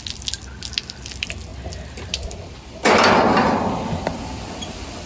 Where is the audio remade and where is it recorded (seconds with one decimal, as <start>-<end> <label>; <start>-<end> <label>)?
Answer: 0.0-5.1 recorded